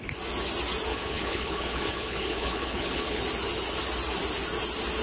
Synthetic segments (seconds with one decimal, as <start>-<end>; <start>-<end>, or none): 0.9-3.2

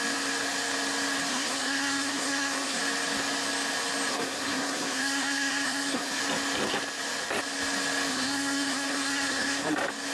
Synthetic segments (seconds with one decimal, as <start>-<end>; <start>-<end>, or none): 1.3-2.8; 4.1-6.2; 8.1-9.7

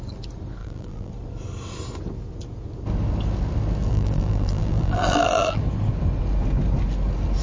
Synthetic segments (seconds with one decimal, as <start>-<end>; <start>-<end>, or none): 0.6-1.1; 3.9-5.6

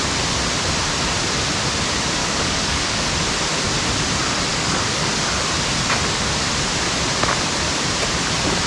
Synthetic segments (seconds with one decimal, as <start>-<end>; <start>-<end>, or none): 2.2-3.1; 4.5-5.1

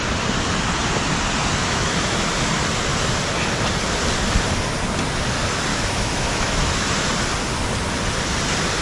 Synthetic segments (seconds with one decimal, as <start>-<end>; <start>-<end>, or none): 1.6-2.3; 5.7-6.9

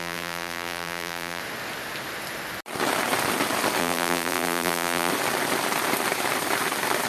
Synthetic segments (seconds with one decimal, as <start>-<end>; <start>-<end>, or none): 0.0-1.4; 3.8-5.1